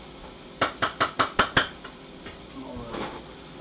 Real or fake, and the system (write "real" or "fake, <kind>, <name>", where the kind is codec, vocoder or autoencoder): real